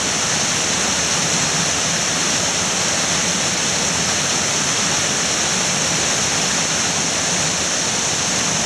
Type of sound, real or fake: real